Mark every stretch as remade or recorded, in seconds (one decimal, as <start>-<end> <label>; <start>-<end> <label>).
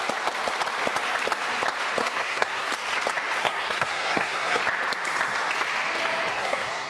0.0-2.0 recorded; 2.0-2.7 remade; 2.7-3.4 recorded; 3.4-4.6 remade; 4.6-6.3 recorded; 6.3-6.9 remade